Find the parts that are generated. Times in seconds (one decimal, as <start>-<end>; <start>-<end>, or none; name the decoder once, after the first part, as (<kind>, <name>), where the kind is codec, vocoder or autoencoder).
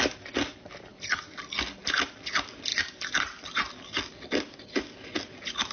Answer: none